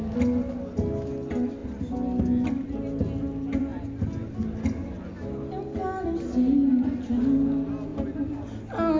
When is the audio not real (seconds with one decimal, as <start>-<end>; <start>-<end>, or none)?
none